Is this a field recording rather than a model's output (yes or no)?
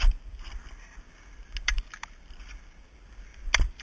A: no